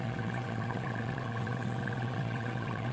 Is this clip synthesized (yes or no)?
yes